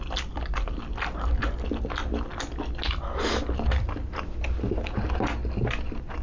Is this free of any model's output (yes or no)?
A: yes